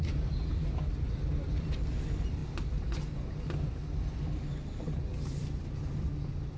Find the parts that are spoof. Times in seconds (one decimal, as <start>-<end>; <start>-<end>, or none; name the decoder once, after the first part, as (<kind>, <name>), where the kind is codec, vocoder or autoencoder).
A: none